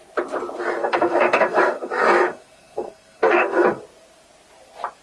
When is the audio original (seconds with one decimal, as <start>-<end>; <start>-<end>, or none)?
0.0-0.8; 3.8-5.0